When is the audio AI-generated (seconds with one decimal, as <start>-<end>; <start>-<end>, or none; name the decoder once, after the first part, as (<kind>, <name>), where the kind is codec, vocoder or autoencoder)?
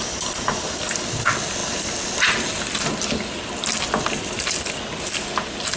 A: none